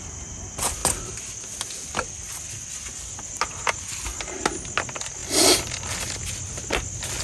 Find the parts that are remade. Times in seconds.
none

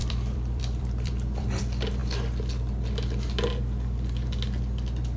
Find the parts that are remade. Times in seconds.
0.0-1.6 (vocoder, BigVGAN v2)

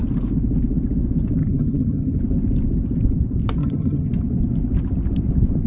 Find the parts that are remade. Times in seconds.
1.4-2.2 (vocoder, HiFi-GAN); 3.6-4.1

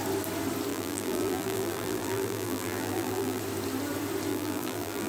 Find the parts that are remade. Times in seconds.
0.7-3.4 (vocoder, BigVGAN v2); 4.3-5.1